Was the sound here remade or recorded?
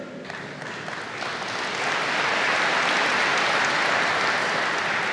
recorded